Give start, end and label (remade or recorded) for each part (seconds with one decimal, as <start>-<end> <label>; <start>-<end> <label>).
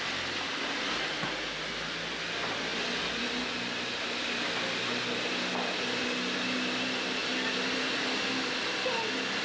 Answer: 0.0-9.4 recorded